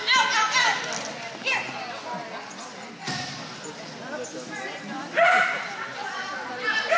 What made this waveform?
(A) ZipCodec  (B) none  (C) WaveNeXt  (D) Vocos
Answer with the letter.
B